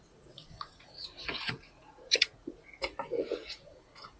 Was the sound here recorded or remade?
remade